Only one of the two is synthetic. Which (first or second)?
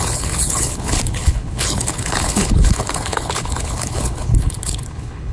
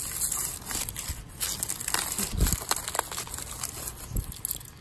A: first